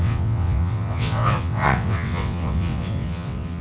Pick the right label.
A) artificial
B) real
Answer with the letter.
A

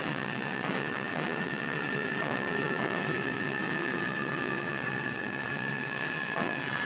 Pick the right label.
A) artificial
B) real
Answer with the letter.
A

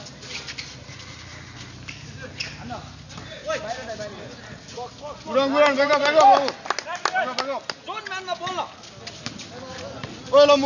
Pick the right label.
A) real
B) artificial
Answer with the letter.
A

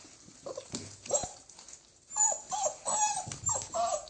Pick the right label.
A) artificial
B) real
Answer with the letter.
B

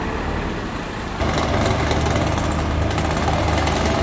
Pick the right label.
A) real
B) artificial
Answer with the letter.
A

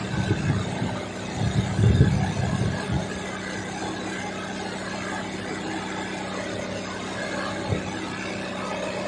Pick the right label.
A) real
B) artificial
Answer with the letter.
A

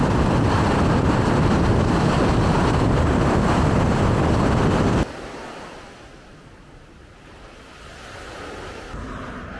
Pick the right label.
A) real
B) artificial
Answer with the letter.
A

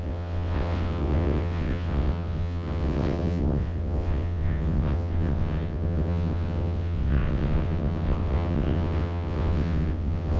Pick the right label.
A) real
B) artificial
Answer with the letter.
B